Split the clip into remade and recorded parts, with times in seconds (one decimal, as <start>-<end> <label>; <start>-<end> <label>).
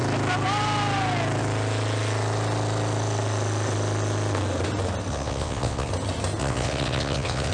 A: 0.0-5.1 recorded; 5.1-5.9 remade; 5.9-6.4 recorded; 6.4-7.5 remade